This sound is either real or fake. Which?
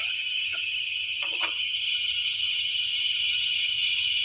fake